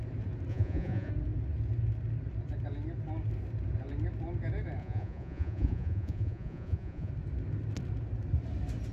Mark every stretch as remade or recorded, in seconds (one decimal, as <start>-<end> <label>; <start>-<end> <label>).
0.0-0.5 recorded; 0.5-1.1 remade; 1.1-4.8 recorded; 4.8-7.1 remade; 7.1-8.9 recorded